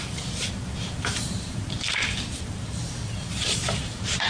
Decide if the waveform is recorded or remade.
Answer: remade